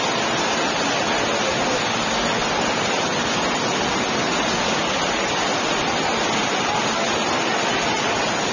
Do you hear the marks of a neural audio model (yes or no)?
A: no